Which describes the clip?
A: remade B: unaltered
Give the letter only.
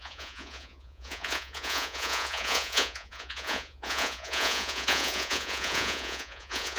A